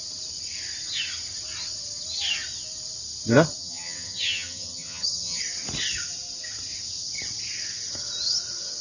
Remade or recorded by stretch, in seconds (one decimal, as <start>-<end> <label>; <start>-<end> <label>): 0.0-3.6 recorded; 3.6-5.4 remade; 5.4-8.8 recorded